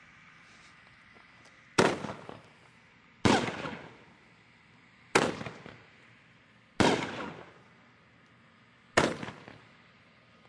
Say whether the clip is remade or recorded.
recorded